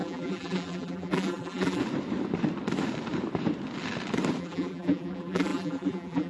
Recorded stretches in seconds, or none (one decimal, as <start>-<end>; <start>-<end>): 1.8-4.4